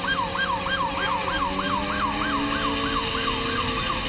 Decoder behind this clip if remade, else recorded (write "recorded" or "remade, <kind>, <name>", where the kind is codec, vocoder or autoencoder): recorded